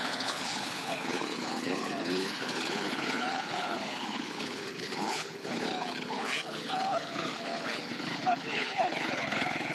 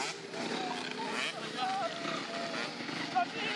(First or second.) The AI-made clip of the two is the first